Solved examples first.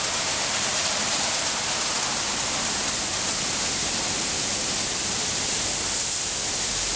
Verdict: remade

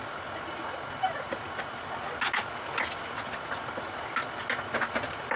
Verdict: recorded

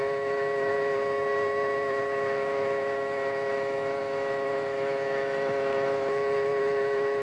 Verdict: remade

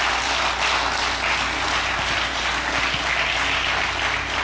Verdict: recorded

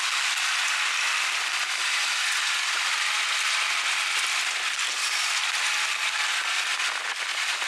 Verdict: recorded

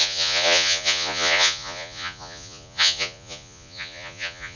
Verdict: remade